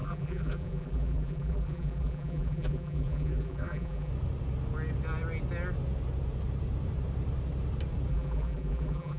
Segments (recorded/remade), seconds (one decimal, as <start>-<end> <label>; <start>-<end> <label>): 0.0-4.1 remade; 4.1-8.1 recorded; 8.1-9.2 remade